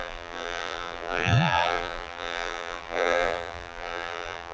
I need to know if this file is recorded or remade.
remade